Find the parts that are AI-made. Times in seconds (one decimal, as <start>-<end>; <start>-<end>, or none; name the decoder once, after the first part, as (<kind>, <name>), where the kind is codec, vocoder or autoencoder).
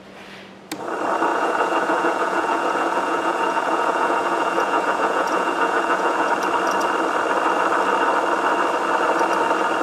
1.3-6.3 (vocoder, Vocos)